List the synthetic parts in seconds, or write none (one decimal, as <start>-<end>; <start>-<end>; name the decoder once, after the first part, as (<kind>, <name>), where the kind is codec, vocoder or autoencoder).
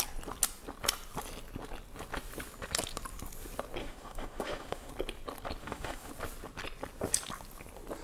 3.8-4.9 (autoencoder, DAC-VAE); 5.6-6.1